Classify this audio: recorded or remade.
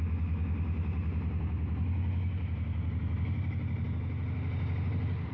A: recorded